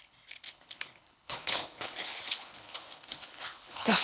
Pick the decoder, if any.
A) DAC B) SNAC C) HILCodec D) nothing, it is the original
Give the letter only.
C